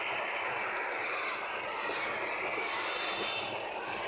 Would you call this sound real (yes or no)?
yes